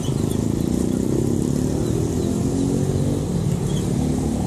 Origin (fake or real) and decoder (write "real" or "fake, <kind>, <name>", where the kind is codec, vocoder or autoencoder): real